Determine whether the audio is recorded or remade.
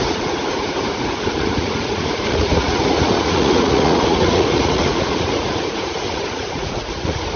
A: remade